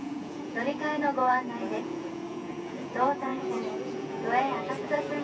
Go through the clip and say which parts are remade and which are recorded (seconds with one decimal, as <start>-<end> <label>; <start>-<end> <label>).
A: 0.0-5.2 remade